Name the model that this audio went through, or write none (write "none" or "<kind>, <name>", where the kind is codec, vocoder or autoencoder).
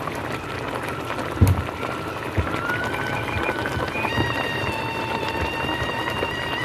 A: none